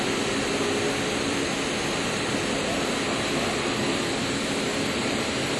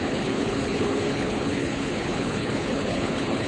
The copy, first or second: second